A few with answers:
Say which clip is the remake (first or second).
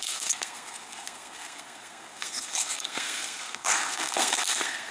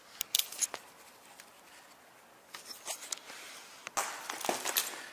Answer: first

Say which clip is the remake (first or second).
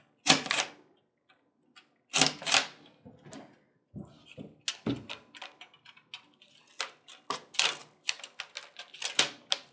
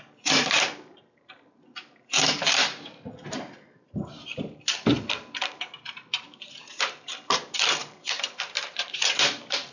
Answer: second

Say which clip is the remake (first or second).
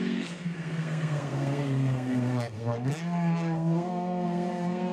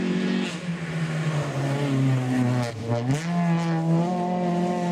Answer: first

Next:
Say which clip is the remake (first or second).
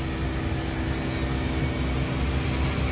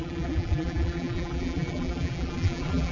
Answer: second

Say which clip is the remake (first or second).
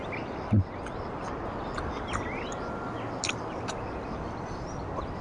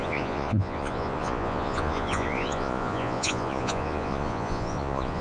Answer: second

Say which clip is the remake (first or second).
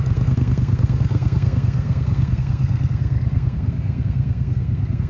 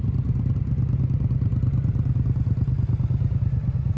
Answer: first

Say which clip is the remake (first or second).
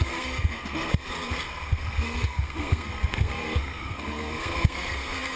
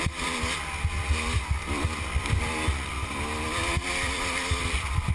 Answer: first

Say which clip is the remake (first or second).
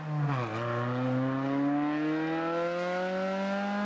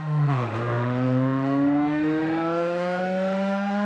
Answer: second